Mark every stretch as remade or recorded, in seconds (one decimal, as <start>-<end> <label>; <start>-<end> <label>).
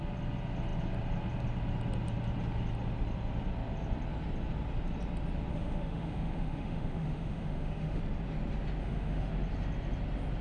0.0-5.5 recorded; 5.5-8.0 remade; 8.0-8.8 recorded; 8.8-9.3 remade; 9.3-10.4 recorded